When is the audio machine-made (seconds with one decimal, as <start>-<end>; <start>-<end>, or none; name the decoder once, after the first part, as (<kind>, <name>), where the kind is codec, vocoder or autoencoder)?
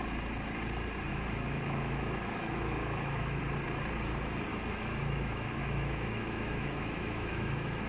1.1-3.4 (autoencoder, DAC-VAE); 4.5-7.9